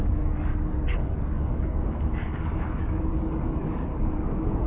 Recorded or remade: remade